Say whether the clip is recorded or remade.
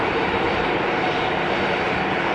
remade